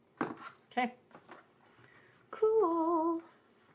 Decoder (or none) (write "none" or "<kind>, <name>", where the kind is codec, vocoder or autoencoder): none